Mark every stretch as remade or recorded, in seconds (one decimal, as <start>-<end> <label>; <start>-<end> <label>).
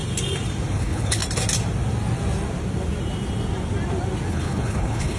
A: 0.0-0.7 recorded; 0.7-1.2 remade; 1.2-4.3 recorded; 4.3-5.2 remade